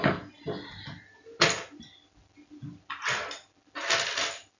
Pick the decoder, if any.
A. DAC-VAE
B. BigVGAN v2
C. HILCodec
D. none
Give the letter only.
D